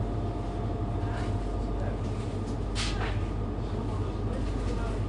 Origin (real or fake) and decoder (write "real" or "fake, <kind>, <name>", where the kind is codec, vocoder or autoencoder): real